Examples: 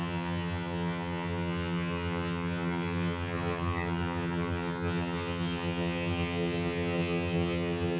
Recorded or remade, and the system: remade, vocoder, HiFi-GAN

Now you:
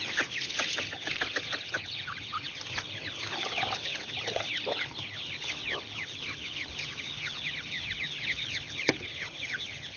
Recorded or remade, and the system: remade, codec, HILCodec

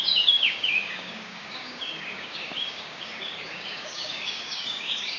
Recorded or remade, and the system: remade, codec, DAC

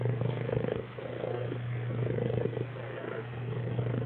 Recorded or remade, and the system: remade, codec, SNAC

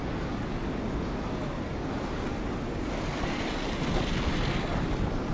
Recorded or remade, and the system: recorded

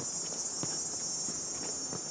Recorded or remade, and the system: recorded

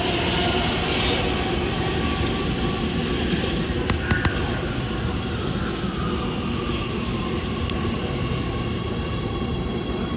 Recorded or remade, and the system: recorded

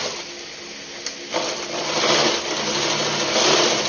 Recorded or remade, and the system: recorded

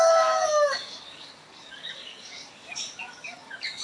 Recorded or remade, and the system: remade, codec, DAC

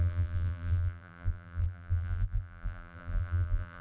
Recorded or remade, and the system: remade, vocoder, BigVGAN v2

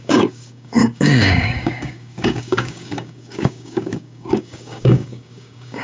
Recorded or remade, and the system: remade, codec, DAC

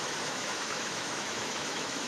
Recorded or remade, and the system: remade, autoencoder, DAC-VAE